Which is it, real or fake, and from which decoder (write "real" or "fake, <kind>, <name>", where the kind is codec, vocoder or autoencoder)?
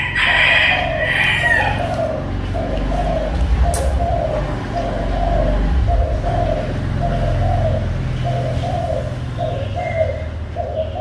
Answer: real